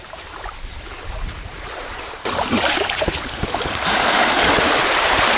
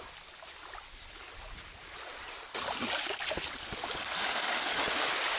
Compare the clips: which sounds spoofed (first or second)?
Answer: first